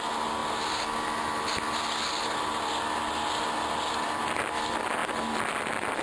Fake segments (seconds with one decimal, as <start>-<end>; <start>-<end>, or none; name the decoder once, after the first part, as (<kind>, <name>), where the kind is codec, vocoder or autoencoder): none